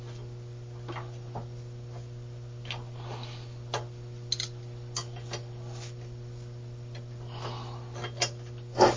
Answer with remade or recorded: recorded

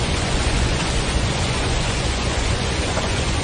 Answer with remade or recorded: remade